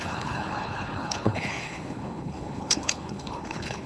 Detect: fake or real fake